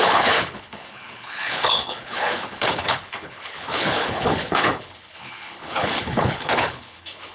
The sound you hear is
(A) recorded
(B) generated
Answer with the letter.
B